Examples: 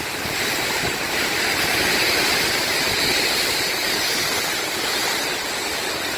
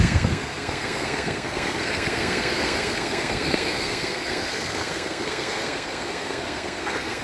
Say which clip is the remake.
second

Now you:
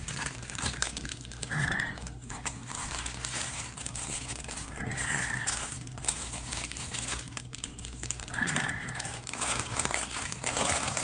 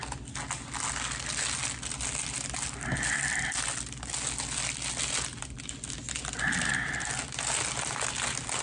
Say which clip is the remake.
first